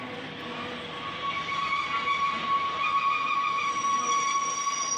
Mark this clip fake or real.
real